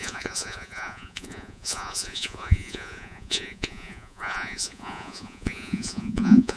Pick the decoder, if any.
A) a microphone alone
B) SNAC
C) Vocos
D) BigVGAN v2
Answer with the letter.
C